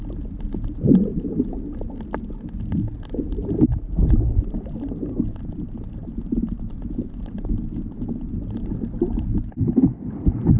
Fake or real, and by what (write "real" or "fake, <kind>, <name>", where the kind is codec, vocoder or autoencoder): real